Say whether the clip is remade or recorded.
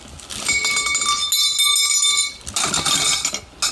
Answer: recorded